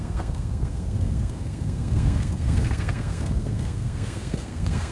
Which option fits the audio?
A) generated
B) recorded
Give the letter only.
A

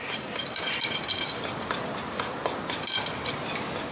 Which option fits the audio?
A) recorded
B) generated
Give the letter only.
A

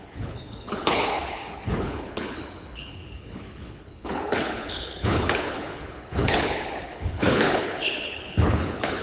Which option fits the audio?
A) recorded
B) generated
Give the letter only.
B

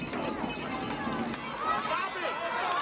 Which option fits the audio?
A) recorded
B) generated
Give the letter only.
A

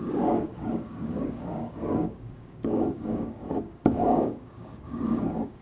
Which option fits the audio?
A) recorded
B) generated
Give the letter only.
B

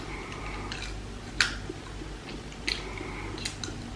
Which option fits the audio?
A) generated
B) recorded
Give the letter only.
B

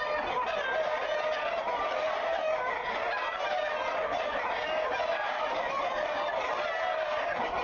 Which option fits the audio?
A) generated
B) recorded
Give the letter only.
B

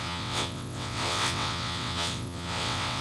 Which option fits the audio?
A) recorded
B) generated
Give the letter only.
B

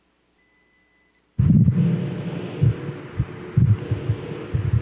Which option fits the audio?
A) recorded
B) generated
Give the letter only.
A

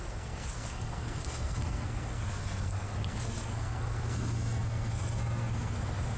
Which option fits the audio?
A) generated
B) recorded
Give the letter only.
A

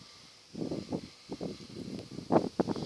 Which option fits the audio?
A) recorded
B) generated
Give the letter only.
A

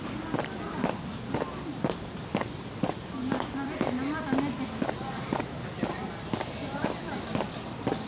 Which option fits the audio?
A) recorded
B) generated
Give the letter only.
A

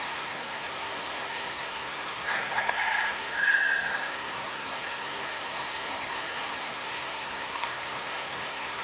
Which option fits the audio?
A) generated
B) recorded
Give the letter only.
A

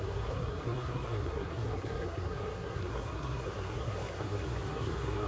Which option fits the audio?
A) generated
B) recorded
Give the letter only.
A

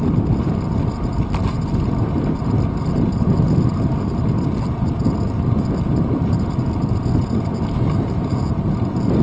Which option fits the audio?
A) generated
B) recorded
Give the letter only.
B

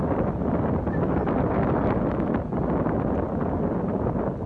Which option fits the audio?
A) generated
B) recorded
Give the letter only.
B